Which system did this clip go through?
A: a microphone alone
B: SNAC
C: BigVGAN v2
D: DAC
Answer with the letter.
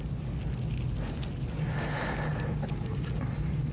A